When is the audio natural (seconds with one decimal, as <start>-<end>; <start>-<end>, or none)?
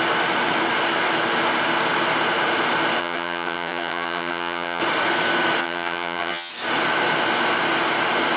0.0-3.0; 4.8-5.6; 6.5-8.4